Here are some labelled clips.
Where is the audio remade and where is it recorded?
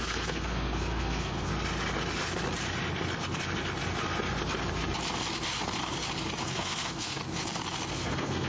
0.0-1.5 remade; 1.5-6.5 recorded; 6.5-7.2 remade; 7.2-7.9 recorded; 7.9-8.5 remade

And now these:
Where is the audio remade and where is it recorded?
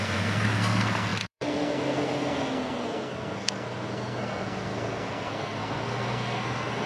0.0-6.9 remade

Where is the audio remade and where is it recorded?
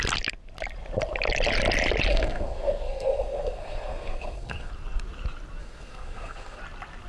0.0-2.1 recorded; 2.1-4.7 remade; 4.7-5.6 recorded; 5.6-6.6 remade; 6.6-7.1 recorded